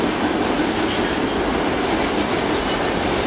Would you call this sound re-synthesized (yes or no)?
no